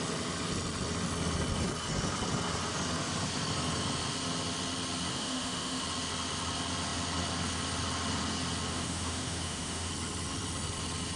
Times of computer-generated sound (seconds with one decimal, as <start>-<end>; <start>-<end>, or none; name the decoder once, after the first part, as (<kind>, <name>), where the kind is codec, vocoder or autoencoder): 5.1-5.8 (autoencoder, DAC-VAE); 8.7-9.9